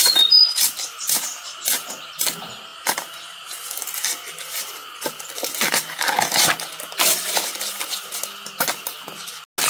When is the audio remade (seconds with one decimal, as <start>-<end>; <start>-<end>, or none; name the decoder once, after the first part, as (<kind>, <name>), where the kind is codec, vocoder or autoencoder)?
2.7-3.8 (vocoder, BigVGAN v2)